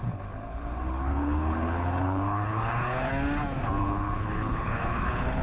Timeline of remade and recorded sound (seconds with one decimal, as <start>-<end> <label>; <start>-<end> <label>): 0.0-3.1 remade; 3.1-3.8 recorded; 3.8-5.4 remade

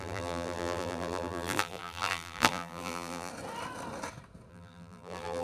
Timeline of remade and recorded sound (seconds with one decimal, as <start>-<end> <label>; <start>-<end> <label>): 0.0-3.3 remade; 3.3-4.5 recorded; 4.5-5.4 remade

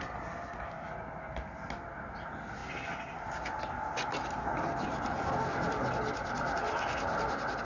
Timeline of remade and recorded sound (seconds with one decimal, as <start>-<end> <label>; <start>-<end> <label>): 0.0-7.6 recorded

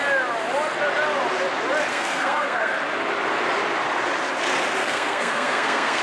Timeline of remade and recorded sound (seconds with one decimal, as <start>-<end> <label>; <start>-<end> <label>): 0.0-1.9 recorded; 1.9-2.7 remade; 2.7-4.8 recorded; 4.8-6.0 remade

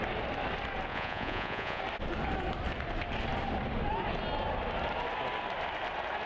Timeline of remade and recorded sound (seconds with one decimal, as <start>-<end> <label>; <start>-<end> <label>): 0.0-0.9 recorded; 0.9-1.8 remade; 1.8-6.3 recorded

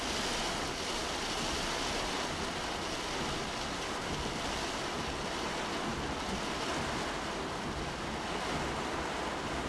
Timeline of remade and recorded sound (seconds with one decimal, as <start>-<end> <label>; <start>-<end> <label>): 0.0-9.7 recorded

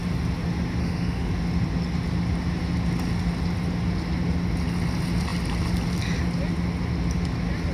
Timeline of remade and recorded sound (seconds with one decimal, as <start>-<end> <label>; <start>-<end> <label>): 0.0-0.8 recorded; 0.8-1.3 remade; 1.3-7.7 recorded

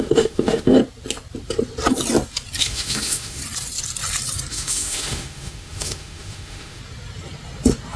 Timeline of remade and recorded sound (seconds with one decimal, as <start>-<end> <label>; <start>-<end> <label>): 0.0-0.8 remade; 0.8-2.6 recorded; 2.6-3.4 remade; 3.4-4.5 recorded; 4.5-6.8 remade; 6.8-8.0 recorded